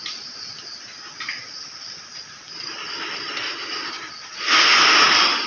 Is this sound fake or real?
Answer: real